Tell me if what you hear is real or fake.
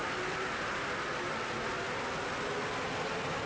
real